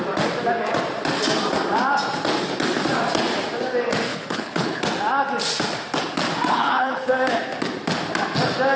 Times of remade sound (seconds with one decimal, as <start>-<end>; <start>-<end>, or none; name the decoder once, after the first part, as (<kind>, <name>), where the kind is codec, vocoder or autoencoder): 4.1-4.8 (codec, HILCodec); 6.5-7.1